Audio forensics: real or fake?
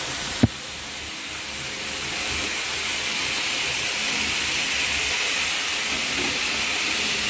real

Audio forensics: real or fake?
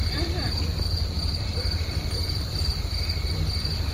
fake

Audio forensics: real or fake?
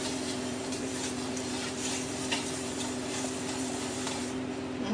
fake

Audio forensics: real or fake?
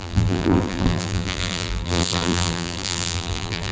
fake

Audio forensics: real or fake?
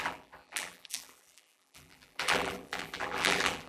fake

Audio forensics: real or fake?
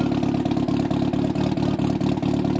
real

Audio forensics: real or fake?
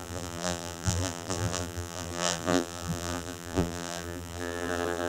fake